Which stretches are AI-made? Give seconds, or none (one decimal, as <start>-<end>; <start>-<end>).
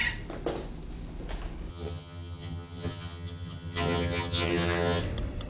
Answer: 1.7-5.0